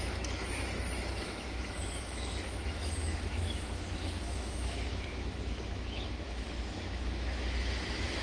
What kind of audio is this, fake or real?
fake